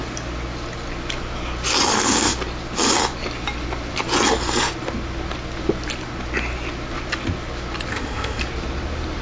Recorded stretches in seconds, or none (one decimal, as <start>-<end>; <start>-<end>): 0.0-7.9; 8.4-9.2